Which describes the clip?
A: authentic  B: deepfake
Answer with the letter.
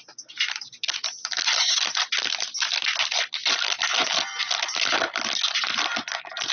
A